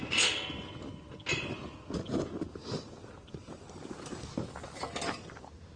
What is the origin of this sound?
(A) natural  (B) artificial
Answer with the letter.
A